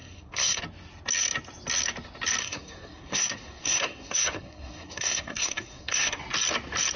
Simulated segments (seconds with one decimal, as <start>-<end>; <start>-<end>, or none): 0.0-0.6; 2.4-6.2